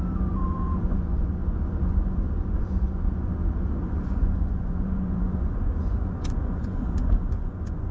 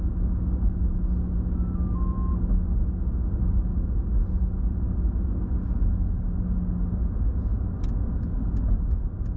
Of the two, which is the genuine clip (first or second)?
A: second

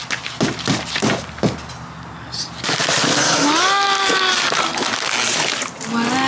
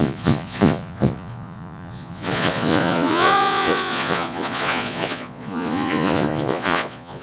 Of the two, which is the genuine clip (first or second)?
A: first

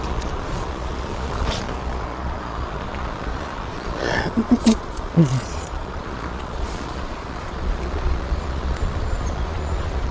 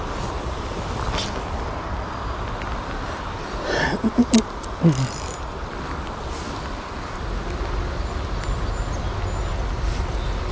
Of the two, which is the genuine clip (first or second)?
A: second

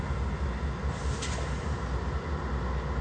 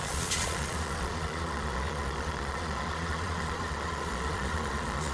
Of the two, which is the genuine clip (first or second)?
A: first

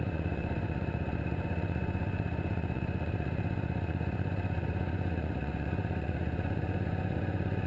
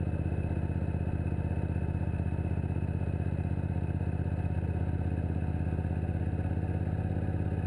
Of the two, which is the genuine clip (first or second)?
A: second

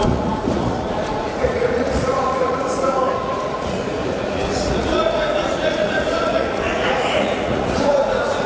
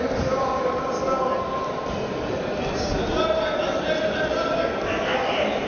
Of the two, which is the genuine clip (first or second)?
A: second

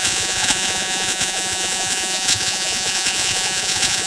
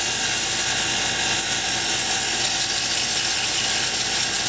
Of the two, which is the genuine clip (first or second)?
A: second